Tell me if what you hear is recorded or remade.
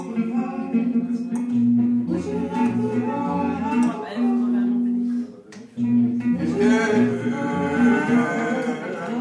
recorded